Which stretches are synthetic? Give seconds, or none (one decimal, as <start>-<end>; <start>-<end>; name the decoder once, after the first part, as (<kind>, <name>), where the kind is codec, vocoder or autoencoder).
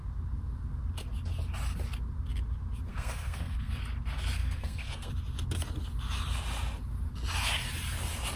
2.9-3.8 (codec, SNAC); 4.4-5.1